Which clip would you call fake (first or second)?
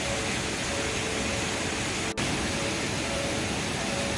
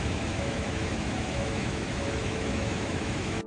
second